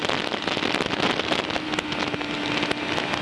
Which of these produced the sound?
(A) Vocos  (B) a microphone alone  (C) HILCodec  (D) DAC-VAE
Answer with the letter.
B